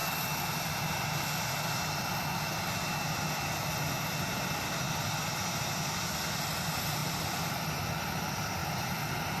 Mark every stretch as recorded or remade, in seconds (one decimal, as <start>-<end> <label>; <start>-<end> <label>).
0.0-7.0 recorded; 7.0-7.8 remade; 7.8-9.4 recorded